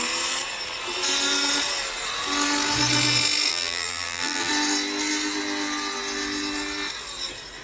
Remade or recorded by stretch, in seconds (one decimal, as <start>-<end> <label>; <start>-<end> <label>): 0.0-3.5 recorded; 3.5-4.5 remade; 4.5-7.6 recorded